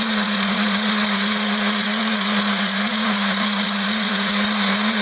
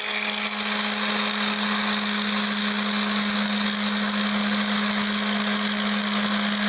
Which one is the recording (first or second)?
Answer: second